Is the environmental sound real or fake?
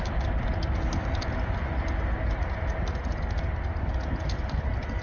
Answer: real